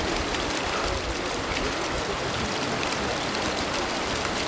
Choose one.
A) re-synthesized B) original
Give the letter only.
B